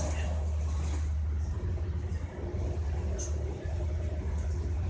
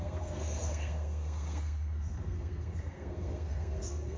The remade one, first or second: second